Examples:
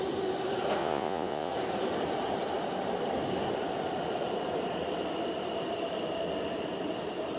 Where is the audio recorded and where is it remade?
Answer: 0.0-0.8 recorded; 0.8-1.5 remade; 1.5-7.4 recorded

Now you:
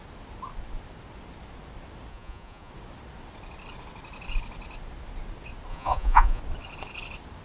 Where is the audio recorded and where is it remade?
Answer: 0.0-2.1 recorded; 2.1-2.7 remade; 2.7-5.7 recorded; 5.7-6.4 remade; 6.4-7.4 recorded